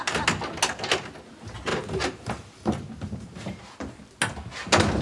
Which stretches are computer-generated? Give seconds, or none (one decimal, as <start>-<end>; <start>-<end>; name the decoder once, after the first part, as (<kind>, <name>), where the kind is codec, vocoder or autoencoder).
1.7-3.6 (vocoder, BigVGAN v2)